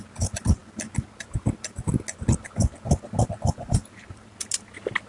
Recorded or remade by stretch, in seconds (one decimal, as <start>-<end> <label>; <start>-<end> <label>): 0.0-5.1 recorded